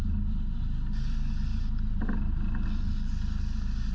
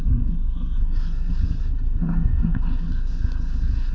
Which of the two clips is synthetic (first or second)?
second